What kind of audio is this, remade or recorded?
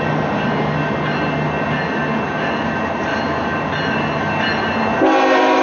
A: recorded